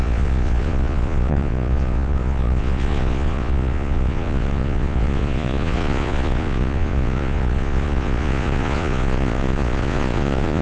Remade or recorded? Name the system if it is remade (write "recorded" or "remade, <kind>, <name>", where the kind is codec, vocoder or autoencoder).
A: remade, vocoder, Vocos